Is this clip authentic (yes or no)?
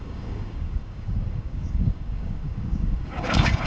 no